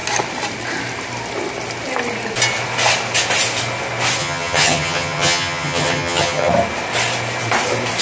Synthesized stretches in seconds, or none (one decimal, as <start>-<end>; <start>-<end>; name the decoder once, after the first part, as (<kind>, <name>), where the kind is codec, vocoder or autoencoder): 4.2-6.5 (vocoder, HiFi-GAN)